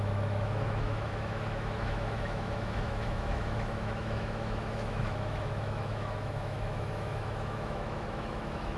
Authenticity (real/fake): fake